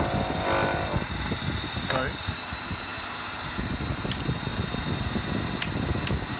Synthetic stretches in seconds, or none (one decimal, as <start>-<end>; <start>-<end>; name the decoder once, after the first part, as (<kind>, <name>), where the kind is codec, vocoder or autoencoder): none